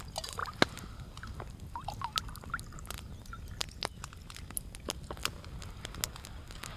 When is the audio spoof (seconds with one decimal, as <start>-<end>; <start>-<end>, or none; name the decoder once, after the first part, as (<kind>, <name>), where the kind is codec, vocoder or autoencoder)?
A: none